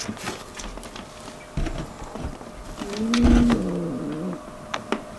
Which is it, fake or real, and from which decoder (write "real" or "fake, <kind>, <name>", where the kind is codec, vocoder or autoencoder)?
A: real